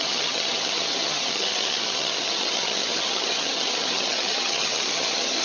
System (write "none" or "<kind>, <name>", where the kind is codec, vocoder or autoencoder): vocoder, HiFi-GAN